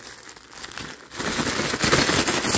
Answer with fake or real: real